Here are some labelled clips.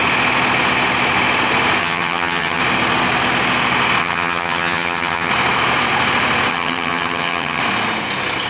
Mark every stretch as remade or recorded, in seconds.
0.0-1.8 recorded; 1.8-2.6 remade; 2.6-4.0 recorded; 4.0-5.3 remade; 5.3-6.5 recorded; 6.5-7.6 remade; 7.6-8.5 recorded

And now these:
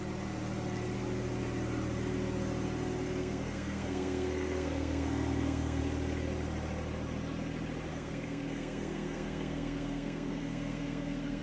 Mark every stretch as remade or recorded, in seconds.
0.0-3.2 recorded; 3.2-5.8 remade; 5.8-7.9 recorded; 7.9-11.4 remade